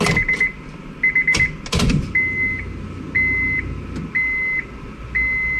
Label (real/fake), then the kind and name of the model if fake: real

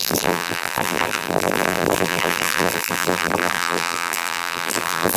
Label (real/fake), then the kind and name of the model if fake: fake, vocoder, BigVGAN v2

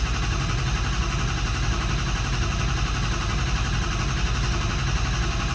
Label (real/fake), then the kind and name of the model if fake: real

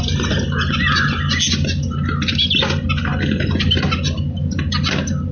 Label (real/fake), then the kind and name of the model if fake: real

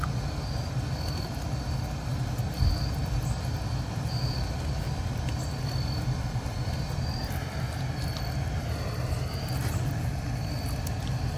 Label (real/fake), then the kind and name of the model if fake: real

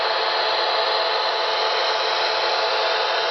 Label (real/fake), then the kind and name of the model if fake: real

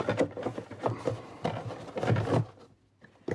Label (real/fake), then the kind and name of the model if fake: real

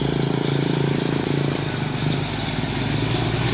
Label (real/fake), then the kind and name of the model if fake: real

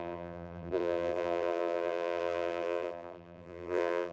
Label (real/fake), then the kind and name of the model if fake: fake, vocoder, BigVGAN v2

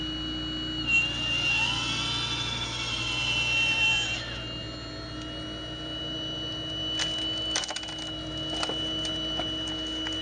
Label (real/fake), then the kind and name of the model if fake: real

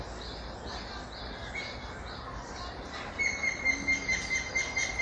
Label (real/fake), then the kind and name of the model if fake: real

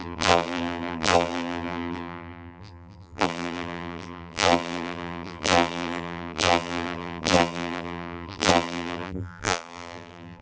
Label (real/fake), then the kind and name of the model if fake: fake, vocoder, BigVGAN v2